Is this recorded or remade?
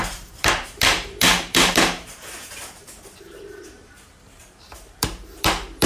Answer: remade